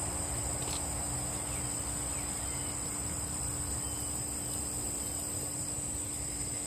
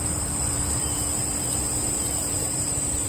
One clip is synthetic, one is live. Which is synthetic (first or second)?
second